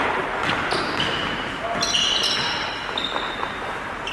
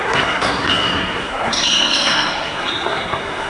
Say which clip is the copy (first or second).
second